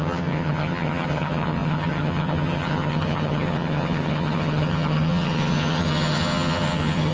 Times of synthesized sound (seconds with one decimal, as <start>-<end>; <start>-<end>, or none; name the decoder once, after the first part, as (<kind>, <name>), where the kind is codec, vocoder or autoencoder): 0.0-7.1 (vocoder, HiFi-GAN)